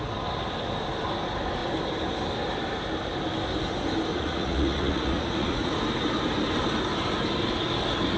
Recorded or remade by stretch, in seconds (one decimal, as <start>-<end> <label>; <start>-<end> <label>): 0.0-4.1 recorded; 4.1-5.7 remade; 5.7-8.2 recorded